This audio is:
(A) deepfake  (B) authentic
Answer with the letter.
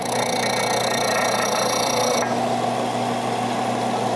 B